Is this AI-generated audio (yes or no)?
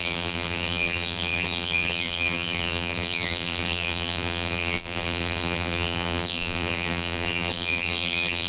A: yes